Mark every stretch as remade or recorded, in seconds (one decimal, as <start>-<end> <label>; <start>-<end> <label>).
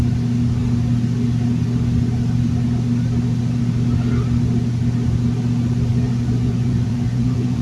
0.0-5.9 recorded; 5.9-7.6 remade